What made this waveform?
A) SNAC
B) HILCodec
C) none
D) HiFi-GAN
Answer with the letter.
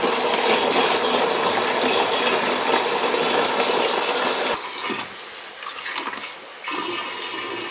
C